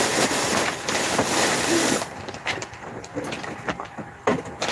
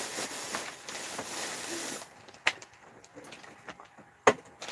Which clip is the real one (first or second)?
second